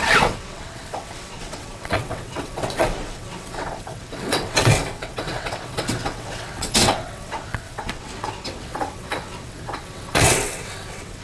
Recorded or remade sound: remade